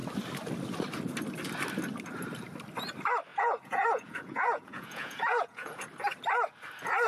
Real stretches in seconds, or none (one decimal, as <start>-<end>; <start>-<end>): 0.0-3.3; 5.8-7.1